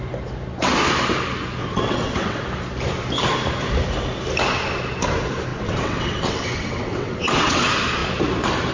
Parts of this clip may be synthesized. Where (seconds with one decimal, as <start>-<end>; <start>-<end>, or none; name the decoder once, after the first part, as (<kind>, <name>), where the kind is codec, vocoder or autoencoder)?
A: 1.6-2.4 (vocoder, WaveNeXt); 5.5-7.6